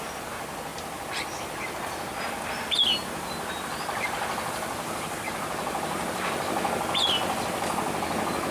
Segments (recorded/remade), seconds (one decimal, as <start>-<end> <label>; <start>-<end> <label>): 0.0-8.5 recorded